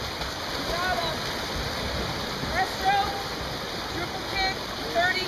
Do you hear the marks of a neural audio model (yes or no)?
no